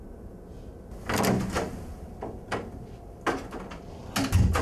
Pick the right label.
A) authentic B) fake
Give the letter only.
A